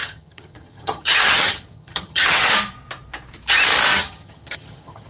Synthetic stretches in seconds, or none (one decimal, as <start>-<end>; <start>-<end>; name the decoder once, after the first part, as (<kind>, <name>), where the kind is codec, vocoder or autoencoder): 0.0-2.5 (vocoder, HiFi-GAN); 3.9-5.1